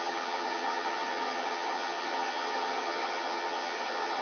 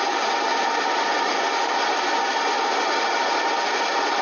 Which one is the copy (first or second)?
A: first